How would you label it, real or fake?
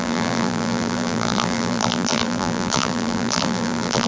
fake